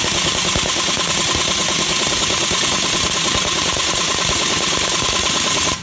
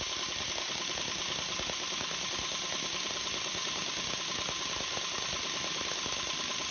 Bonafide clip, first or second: second